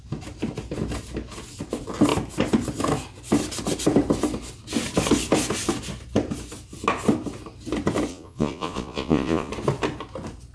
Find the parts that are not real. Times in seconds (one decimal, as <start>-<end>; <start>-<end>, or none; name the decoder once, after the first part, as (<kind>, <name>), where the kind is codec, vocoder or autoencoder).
8.1-9.5 (vocoder, Vocos)